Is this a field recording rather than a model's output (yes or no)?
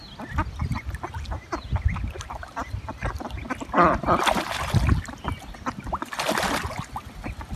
yes